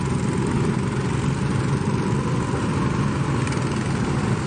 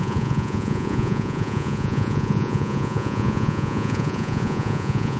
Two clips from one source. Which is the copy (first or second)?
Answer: second